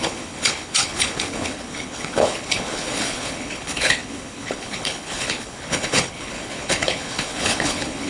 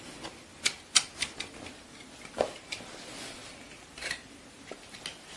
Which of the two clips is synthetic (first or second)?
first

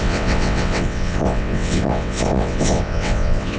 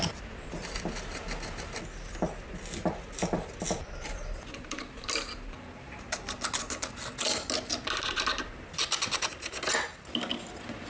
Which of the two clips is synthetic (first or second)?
first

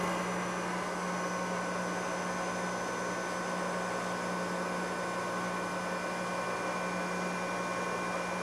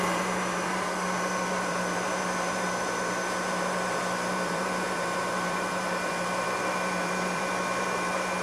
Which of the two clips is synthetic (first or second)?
second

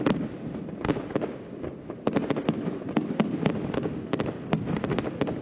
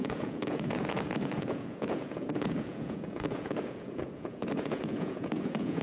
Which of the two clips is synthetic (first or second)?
second